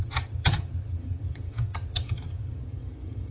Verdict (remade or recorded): remade